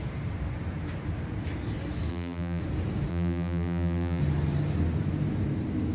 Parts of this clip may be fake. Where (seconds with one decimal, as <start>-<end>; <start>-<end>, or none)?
2.1-2.6; 3.1-4.2